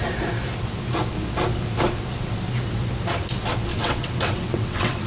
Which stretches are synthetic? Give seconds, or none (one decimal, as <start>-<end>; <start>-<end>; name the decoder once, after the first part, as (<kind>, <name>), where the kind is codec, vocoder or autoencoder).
3.7-5.1 (vocoder, WaveNeXt)